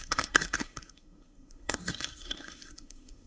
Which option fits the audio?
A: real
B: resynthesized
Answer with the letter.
B